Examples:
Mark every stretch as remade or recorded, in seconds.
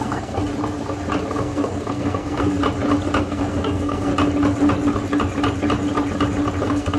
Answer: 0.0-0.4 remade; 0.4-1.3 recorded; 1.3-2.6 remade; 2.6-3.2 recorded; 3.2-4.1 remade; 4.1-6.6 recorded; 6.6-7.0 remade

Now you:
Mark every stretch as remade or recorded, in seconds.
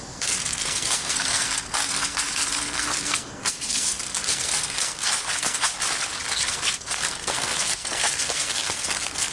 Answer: 0.0-5.7 remade; 5.7-6.3 recorded; 6.3-9.3 remade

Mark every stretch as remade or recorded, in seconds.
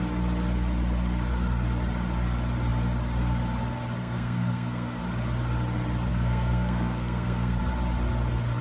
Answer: 0.0-4.0 recorded; 4.0-5.0 remade; 5.0-6.1 recorded; 6.1-7.6 remade; 7.6-8.6 recorded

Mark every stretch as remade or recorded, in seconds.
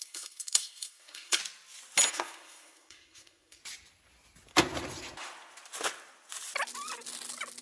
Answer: 0.0-1.4 remade; 1.4-2.1 recorded; 2.1-3.6 remade; 3.6-7.6 recorded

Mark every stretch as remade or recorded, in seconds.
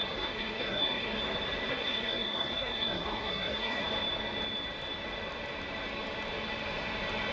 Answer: 0.0-1.2 remade; 1.2-1.7 recorded; 1.7-3.8 remade; 3.8-7.3 recorded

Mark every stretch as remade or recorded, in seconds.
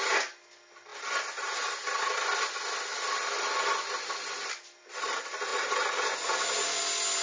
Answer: 0.0-7.2 recorded